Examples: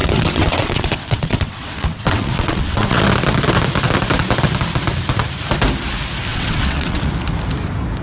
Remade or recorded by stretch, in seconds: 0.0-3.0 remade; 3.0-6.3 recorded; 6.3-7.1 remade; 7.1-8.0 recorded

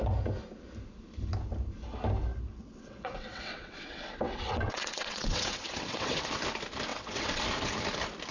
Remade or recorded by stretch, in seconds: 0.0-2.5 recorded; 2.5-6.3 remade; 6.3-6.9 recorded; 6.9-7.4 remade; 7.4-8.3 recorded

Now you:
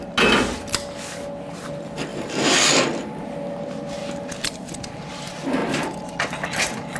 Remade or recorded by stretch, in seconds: 0.0-7.0 recorded

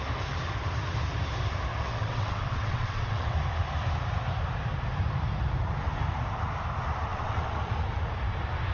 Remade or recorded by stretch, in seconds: 0.0-1.7 recorded; 1.7-3.4 remade; 3.4-7.1 recorded; 7.1-7.6 remade; 7.6-8.7 recorded

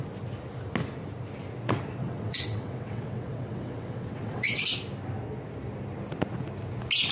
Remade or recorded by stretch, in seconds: 0.0-2.0 recorded; 2.0-4.6 remade; 4.6-7.1 recorded

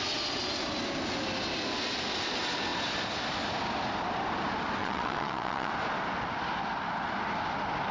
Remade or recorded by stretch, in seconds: 0.0-4.8 recorded; 4.8-5.7 remade; 5.7-7.9 recorded